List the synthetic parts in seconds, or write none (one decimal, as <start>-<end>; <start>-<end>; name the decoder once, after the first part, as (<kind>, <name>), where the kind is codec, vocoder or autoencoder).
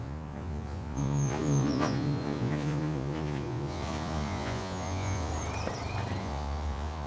0.0-5.3 (vocoder, Vocos); 6.2-7.1